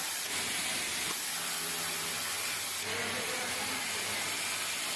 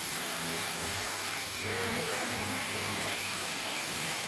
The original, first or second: first